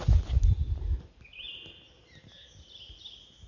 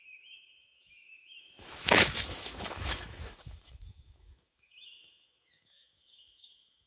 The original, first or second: first